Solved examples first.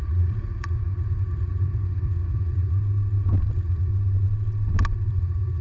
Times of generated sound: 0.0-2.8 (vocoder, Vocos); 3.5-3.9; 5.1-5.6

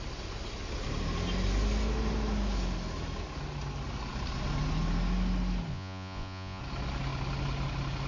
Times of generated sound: 5.7-6.6 (vocoder, Vocos)